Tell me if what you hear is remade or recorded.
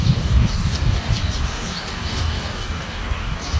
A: remade